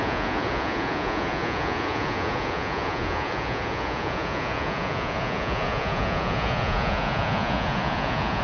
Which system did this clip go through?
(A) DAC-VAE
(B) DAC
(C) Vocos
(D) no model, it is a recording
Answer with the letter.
C